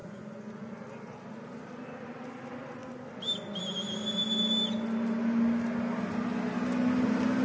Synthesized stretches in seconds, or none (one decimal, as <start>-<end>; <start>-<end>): 0.0-0.5